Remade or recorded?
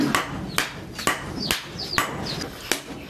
recorded